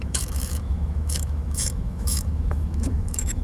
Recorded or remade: remade